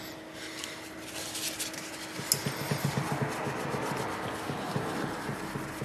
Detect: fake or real real